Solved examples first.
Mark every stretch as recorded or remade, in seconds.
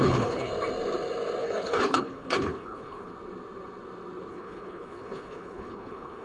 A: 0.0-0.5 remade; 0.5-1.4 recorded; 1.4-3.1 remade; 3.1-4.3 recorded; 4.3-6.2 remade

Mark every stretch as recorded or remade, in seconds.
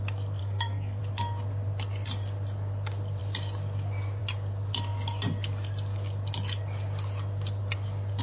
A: 0.0-0.4 recorded; 0.4-1.0 remade; 1.0-8.2 recorded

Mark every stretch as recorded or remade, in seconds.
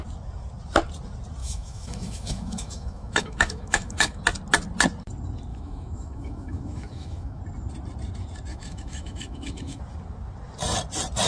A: 0.0-1.4 recorded; 1.4-4.2 remade; 4.2-5.5 recorded; 5.5-7.4 remade; 7.4-8.5 recorded; 8.5-9.8 remade; 9.8-11.3 recorded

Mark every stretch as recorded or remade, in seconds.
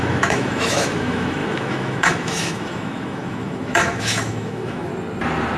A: 0.0-4.9 remade; 4.9-5.6 recorded